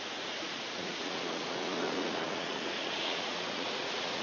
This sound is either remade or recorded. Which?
remade